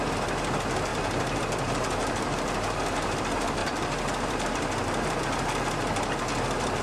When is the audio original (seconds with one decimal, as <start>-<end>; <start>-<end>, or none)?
0.0-0.9; 3.2-3.6; 5.2-6.8